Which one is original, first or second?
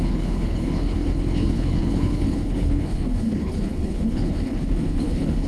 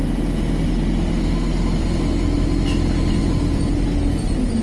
second